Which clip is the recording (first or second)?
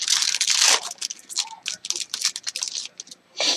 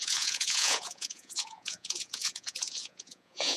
first